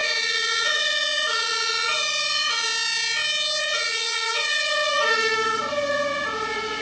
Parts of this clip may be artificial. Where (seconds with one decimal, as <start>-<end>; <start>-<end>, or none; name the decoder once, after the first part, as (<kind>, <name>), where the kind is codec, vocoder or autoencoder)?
0.0-2.7 (vocoder, Vocos); 3.6-6.8